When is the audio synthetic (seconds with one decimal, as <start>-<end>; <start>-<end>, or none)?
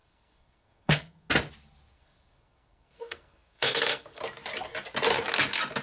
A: 0.0-1.3; 1.9-4.2